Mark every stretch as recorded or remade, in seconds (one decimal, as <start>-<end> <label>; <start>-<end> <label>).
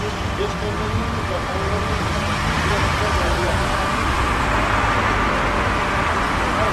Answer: 0.0-6.7 recorded